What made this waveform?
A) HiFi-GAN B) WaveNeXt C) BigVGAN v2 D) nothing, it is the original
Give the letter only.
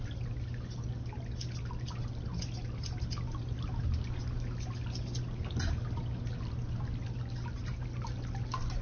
D